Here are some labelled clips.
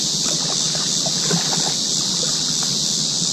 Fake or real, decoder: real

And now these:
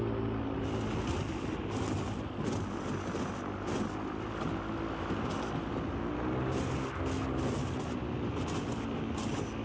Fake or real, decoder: real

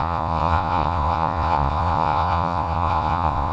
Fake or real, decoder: fake, vocoder, Vocos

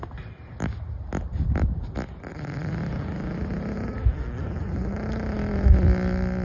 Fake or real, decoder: real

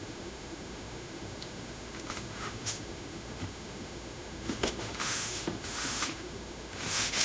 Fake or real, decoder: fake, autoencoder, DAC-VAE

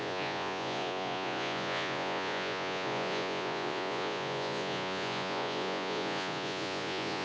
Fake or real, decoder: fake, vocoder, Vocos